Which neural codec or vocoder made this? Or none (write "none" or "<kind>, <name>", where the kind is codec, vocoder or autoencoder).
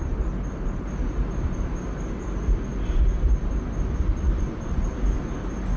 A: none